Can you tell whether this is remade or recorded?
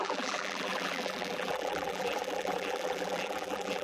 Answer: remade